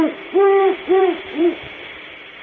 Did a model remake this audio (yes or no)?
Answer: yes